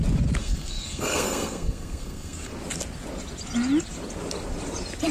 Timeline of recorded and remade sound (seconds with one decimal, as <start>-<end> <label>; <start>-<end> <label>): 0.0-0.4 recorded; 0.4-2.5 remade; 2.5-5.1 recorded